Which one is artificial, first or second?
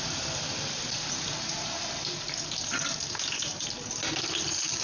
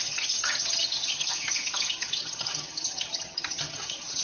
second